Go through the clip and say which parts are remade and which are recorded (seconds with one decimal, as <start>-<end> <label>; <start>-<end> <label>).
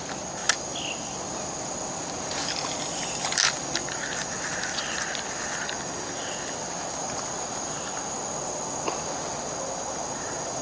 0.0-10.6 recorded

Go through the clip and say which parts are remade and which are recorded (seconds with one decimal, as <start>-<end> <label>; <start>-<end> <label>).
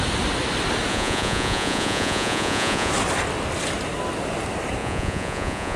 0.0-0.9 recorded; 0.9-2.9 remade; 2.9-4.8 recorded; 4.8-5.8 remade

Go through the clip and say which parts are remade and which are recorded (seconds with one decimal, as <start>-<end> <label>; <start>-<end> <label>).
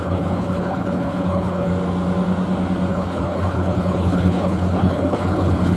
0.0-1.7 remade; 1.7-2.9 recorded; 2.9-5.8 remade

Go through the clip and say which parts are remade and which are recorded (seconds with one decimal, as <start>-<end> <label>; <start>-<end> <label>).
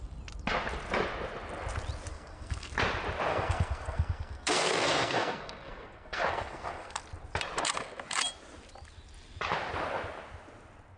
0.0-2.1 recorded; 2.1-2.7 remade; 2.7-3.3 recorded; 3.3-7.0 remade; 7.0-11.0 recorded